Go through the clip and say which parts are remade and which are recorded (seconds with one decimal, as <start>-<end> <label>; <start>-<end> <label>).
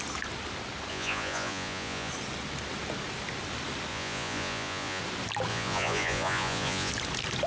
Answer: 0.0-0.9 recorded; 0.9-2.1 remade; 2.1-3.9 recorded; 3.9-5.0 remade; 5.0-5.5 recorded; 5.5-6.9 remade; 6.9-7.5 recorded